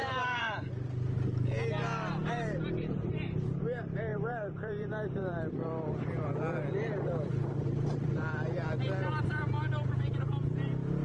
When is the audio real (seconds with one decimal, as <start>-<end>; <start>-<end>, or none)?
0.7-2.2; 3.6-4.1; 8.8-11.0